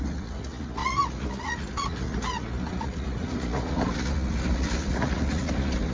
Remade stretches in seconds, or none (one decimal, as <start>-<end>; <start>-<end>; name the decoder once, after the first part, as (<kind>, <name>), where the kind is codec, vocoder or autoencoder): 0.0-5.9 (vocoder, Vocos)